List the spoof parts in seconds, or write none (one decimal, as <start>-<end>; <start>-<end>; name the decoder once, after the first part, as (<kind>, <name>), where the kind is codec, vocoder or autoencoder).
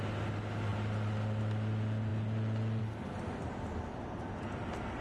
none